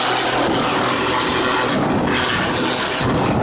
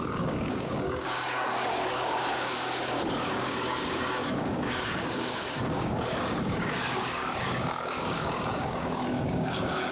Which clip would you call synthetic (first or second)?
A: second